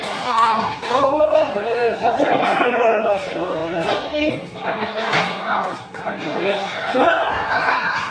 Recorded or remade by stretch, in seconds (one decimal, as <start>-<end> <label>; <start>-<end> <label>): 0.0-8.1 remade